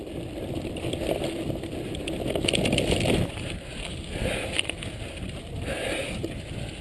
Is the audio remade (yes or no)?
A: no